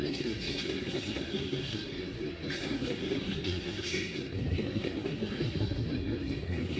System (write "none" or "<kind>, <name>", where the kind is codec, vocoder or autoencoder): codec, SNAC